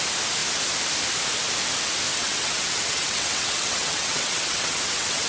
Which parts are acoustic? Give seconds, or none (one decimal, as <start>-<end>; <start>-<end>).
0.0-2.1